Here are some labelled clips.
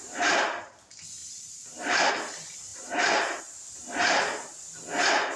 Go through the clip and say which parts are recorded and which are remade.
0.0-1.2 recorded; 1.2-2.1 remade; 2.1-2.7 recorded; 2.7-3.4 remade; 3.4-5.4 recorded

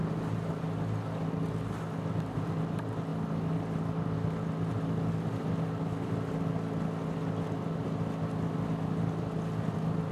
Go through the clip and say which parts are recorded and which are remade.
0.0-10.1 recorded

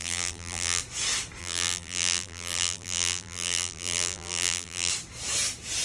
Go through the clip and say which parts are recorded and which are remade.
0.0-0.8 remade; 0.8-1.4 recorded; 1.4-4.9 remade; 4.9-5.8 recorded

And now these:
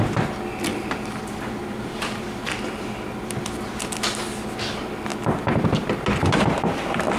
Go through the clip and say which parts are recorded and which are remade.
0.0-0.7 recorded; 0.7-3.7 remade; 3.7-7.2 recorded

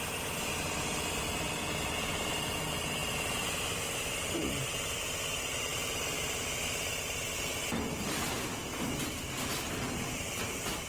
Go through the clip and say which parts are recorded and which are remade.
0.0-7.5 recorded; 7.5-9.5 remade; 9.5-10.9 recorded

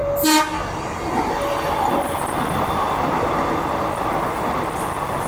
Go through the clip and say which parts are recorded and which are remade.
0.0-5.3 recorded